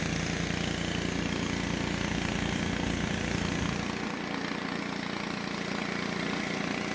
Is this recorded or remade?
recorded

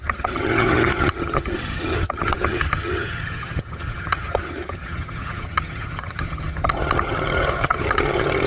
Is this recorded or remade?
remade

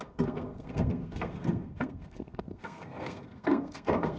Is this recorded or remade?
remade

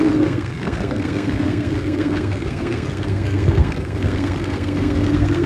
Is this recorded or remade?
remade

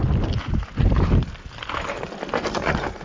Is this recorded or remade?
recorded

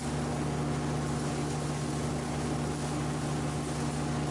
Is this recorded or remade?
recorded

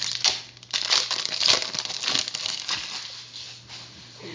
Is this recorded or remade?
recorded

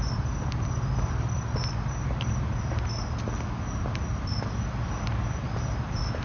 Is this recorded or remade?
recorded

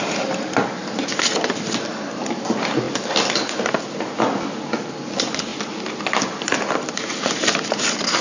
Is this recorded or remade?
recorded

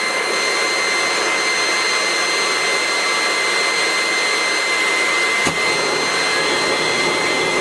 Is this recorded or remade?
recorded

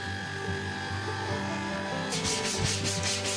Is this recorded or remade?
recorded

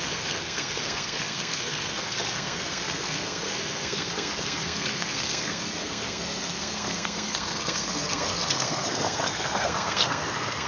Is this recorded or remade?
remade